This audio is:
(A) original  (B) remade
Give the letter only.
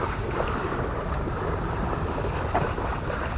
A